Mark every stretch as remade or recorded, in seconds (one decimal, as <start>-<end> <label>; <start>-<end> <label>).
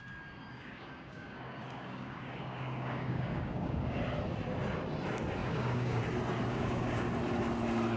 0.0-0.5 recorded; 0.5-4.0 remade; 4.0-5.4 recorded; 5.4-6.0 remade; 6.0-6.5 recorded; 6.5-7.1 remade; 7.1-8.0 recorded